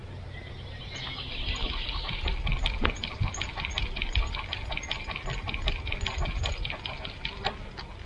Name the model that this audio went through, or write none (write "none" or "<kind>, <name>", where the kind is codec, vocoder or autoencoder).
none